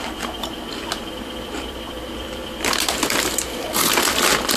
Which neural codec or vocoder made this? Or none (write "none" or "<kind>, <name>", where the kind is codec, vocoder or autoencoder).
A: vocoder, BigVGAN v2